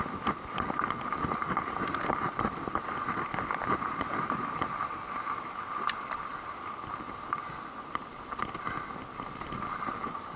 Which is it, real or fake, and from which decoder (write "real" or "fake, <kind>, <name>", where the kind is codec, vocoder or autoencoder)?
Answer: real